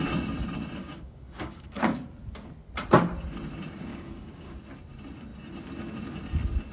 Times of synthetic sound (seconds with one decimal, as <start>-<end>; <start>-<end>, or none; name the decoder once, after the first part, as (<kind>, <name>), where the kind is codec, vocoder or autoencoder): 0.8-2.0 (codec, DAC); 3.9-4.6